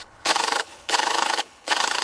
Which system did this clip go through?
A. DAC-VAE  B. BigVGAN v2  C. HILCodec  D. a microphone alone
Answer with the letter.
C